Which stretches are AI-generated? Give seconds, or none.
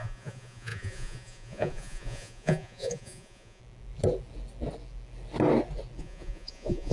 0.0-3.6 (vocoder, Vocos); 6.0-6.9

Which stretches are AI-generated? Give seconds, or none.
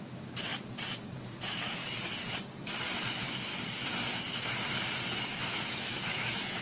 0.0-0.5 (autoencoder, DAC-VAE); 1.2-1.8; 3.1-3.5; 5.2-6.6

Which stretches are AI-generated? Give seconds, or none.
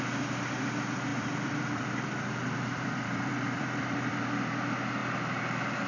1.1-4.6 (vocoder, BigVGAN v2)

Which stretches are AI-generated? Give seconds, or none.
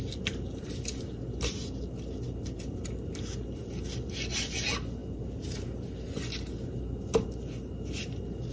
none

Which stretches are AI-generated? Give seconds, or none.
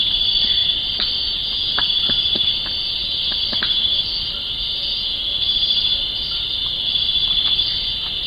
none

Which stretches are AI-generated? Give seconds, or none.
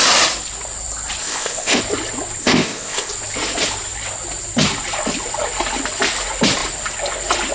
1.2-1.8 (codec, ZipCodec); 2.4-3.1